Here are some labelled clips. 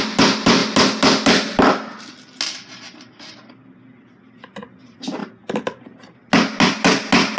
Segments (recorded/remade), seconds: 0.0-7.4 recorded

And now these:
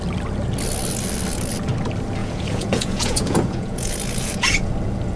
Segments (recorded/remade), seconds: 0.0-2.2 recorded; 2.2-4.7 remade; 4.7-5.2 recorded

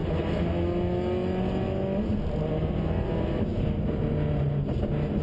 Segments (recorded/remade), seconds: 0.0-5.2 recorded

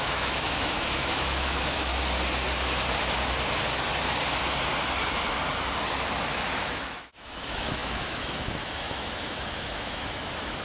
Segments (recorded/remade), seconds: 0.0-1.9 remade; 1.9-6.2 recorded; 6.2-10.6 remade

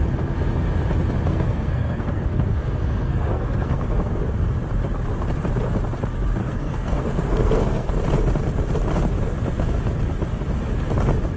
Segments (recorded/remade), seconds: 0.0-1.3 recorded; 1.3-4.2 remade; 4.2-6.4 recorded; 6.4-7.9 remade; 7.9-11.4 recorded

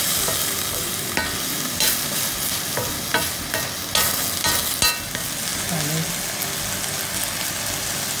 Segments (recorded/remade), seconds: 0.0-8.2 recorded

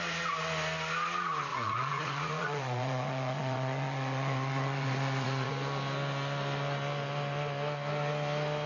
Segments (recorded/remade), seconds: 0.0-1.5 recorded; 1.5-5.5 remade; 5.5-8.7 recorded

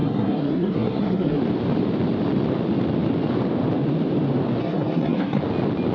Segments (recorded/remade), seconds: 0.0-1.4 remade; 1.4-4.6 recorded; 4.6-5.4 remade; 5.4-5.9 recorded